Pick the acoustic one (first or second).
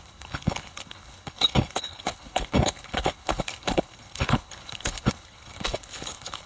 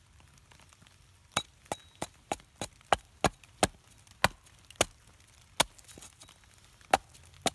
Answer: second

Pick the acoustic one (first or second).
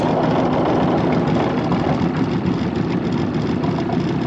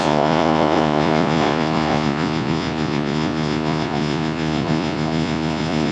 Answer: first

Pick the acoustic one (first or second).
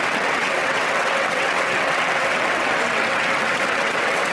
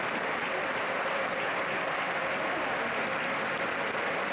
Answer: second